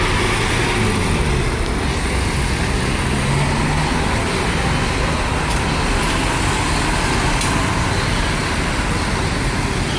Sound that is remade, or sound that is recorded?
recorded